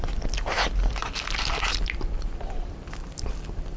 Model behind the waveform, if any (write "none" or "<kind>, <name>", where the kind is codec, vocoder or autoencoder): vocoder, BigVGAN v2